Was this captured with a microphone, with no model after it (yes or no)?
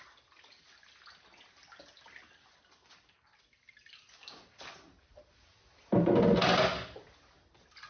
yes